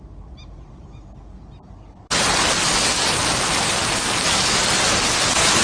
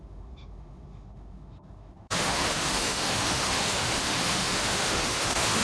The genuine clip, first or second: first